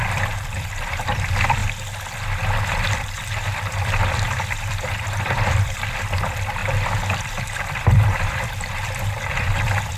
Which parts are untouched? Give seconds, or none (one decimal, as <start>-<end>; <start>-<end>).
1.6-2.8